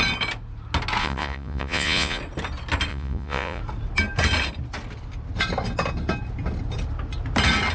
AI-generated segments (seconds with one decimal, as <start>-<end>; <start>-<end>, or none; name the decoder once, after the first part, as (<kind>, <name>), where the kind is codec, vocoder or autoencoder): 1.0-2.2 (vocoder, Vocos); 2.9-3.6